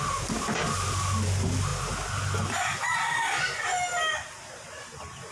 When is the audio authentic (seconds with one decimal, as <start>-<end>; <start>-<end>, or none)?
0.0-5.3